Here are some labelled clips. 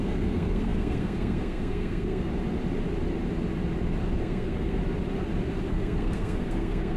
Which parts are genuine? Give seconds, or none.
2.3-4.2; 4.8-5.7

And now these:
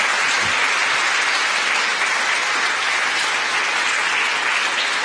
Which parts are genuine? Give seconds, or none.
0.0-5.0

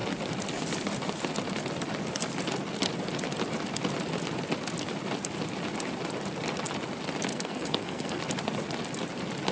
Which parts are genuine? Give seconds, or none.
0.0-7.3; 8.2-9.5

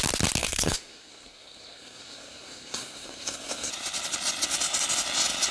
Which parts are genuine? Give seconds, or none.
0.0-0.4; 3.7-5.5

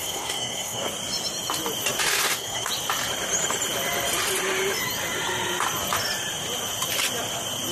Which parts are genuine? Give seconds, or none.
0.9-2.1; 2.7-7.7

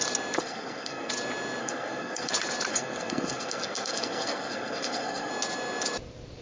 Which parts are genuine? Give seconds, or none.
0.0-0.4; 1.1-1.6; 2.3-2.7; 5.3-6.4

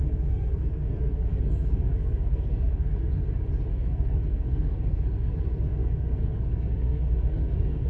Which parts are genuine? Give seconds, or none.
3.2-3.7